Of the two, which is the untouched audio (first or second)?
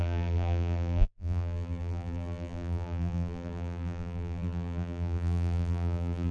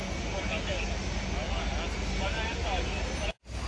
second